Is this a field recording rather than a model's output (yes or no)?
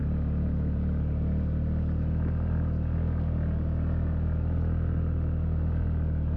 yes